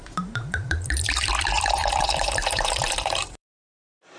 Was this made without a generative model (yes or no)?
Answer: no